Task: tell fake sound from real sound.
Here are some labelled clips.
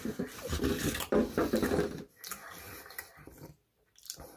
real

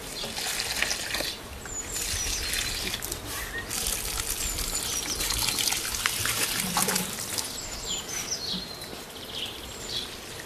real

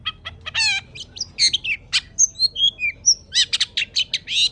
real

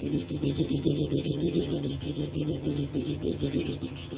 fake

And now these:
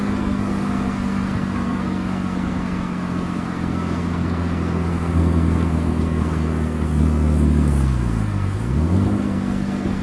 fake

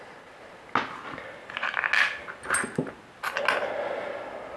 real